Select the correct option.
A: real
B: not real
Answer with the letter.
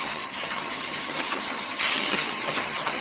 B